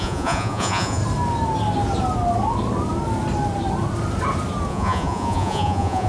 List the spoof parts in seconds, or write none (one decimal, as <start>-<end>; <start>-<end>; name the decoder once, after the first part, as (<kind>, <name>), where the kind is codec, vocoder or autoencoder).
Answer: 0.0-1.0 (vocoder, Vocos); 4.7-6.1